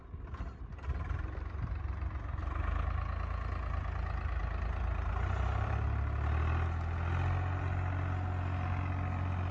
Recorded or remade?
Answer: recorded